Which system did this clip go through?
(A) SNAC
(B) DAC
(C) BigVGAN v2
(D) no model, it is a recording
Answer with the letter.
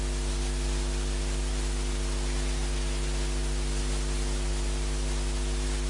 D